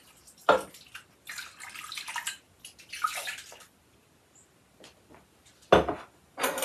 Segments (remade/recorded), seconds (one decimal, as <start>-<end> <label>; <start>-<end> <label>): 0.0-6.6 recorded